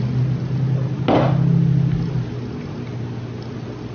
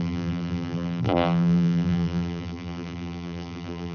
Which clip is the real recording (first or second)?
first